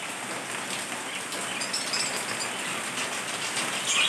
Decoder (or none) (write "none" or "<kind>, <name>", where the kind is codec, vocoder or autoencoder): none